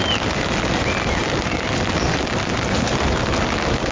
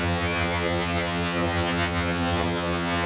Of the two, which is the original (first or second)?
first